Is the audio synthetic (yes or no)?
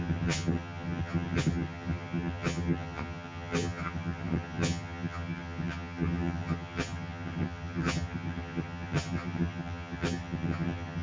yes